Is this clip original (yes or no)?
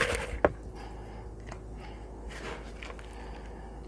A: yes